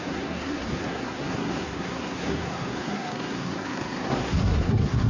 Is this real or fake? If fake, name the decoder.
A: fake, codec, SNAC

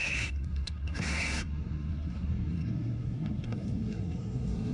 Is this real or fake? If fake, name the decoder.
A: fake, codec, SNAC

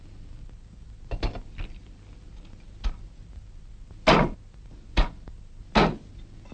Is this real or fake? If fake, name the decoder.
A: real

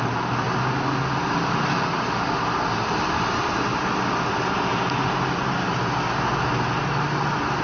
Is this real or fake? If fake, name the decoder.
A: real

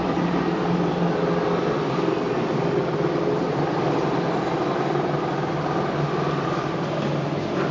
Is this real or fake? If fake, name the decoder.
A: real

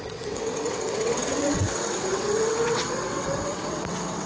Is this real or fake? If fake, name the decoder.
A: fake, vocoder, WaveNeXt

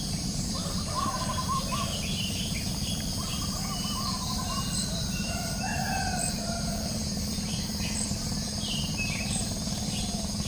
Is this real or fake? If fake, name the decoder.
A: fake, vocoder, BigVGAN v2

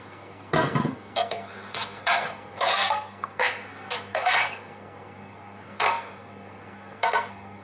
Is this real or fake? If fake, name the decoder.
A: fake, codec, SNAC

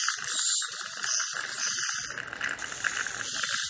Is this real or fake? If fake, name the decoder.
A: real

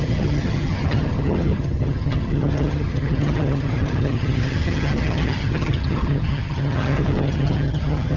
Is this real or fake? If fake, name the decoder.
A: fake, vocoder, HiFi-GAN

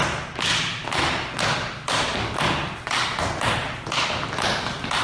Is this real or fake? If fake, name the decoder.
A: real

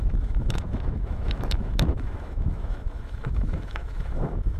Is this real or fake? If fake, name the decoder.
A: fake, autoencoder, DAC-VAE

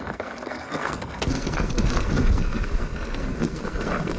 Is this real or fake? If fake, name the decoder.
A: fake, codec, SNAC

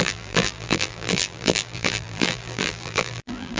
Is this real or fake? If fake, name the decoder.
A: fake, vocoder, BigVGAN v2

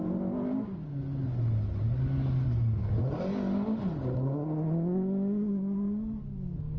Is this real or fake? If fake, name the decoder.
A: real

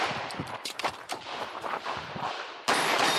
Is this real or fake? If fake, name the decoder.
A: fake, vocoder, BigVGAN v2